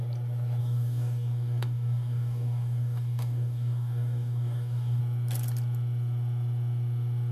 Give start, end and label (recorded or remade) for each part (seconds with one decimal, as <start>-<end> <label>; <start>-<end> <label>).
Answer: 0.0-0.6 recorded; 0.6-5.0 remade; 5.0-7.3 recorded

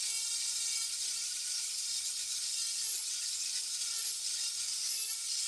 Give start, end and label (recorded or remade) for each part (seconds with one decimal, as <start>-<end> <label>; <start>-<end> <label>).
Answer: 0.0-5.5 recorded

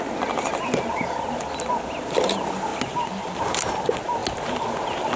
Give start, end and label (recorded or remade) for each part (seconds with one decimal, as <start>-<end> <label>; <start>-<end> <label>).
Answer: 0.0-5.2 recorded

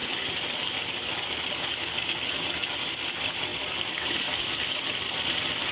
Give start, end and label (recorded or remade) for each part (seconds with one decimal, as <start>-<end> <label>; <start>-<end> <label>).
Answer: 0.0-3.5 recorded; 3.5-5.2 remade; 5.2-5.7 recorded